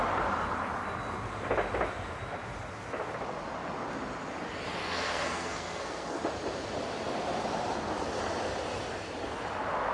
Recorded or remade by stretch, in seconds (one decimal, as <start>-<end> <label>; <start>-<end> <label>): 0.0-4.8 recorded; 4.8-6.2 remade; 6.2-9.9 recorded